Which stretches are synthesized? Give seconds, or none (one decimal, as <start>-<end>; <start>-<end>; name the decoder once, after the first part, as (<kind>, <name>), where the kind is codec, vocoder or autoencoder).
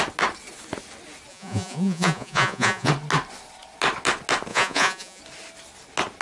1.3-2.9 (vocoder, Vocos); 4.5-5.2